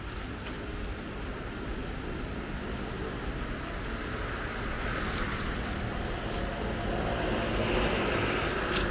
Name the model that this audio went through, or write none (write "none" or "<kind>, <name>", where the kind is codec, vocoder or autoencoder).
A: none